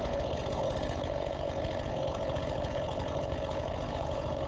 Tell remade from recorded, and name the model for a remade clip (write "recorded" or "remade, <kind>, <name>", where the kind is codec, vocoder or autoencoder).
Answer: remade, codec, HILCodec